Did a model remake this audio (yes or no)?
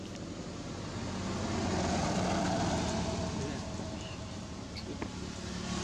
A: no